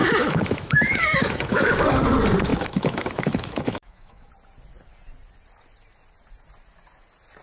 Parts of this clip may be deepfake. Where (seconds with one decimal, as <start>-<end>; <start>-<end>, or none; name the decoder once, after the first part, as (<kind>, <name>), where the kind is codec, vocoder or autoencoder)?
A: 0.0-1.9 (autoencoder, DAC-VAE); 2.5-4.3